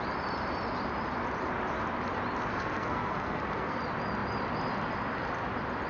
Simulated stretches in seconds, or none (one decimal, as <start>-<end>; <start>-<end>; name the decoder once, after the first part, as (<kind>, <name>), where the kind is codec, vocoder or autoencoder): 2.5-3.8 (codec, SNAC)

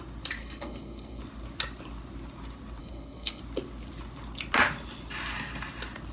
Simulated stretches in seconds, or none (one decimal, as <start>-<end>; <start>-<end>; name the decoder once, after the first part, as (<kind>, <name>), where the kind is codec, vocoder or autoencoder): 0.4-1.2 (codec, SNAC); 2.8-3.4

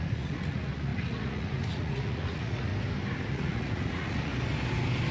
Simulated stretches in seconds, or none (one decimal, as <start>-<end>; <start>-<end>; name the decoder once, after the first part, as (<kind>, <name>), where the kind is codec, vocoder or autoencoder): 0.0-2.7 (vocoder, Vocos); 3.3-4.3

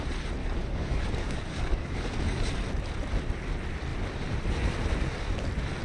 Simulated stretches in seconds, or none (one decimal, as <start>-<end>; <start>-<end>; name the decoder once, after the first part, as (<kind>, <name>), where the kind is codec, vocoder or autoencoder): 0.4-2.5 (codec, DAC)

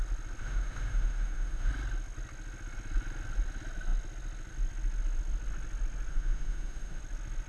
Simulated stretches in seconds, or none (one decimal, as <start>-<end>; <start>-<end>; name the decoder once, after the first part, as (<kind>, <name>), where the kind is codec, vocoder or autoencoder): 0.4-1.7 (autoencoder, DAC-VAE); 6.1-7.0

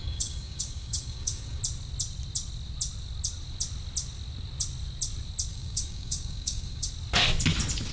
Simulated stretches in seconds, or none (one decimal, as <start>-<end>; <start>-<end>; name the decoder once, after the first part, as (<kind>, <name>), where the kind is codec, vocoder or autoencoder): 0.0-1.6 (codec, DAC); 5.5-6.9